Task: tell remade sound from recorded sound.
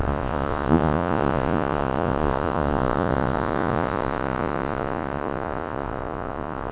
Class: remade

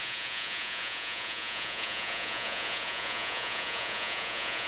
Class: remade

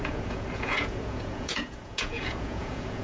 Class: remade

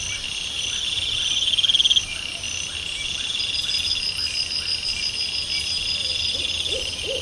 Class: recorded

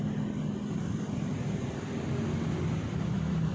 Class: recorded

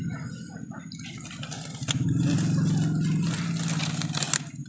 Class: recorded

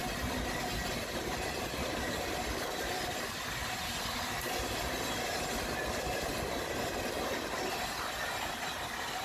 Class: recorded